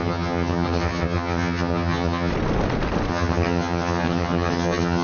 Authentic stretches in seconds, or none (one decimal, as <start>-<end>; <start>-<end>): 2.3-3.1

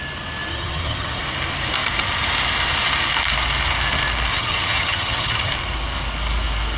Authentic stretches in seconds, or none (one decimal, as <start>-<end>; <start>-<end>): 0.0-0.5; 1.2-4.3; 5.5-6.8